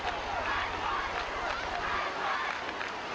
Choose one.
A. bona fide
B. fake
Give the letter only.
A